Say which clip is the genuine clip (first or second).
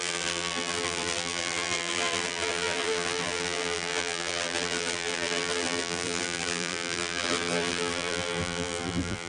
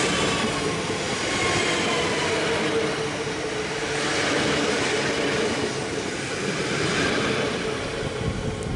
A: second